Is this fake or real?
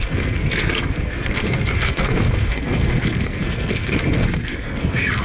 fake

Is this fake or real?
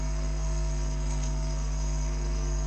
fake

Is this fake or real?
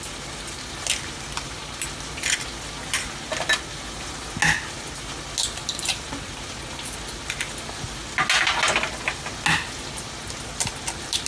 real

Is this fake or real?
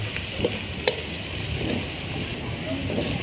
real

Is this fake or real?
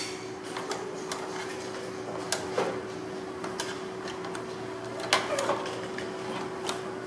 real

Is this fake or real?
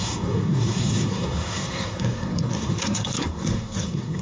fake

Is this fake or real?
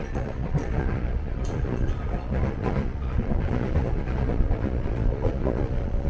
fake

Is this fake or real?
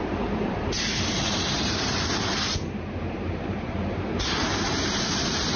fake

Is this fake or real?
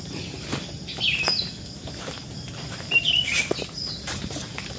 real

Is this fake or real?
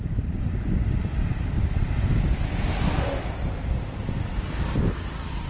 real